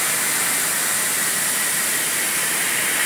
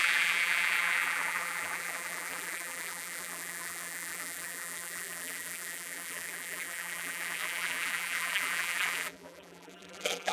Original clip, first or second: first